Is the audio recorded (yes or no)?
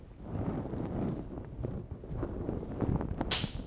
yes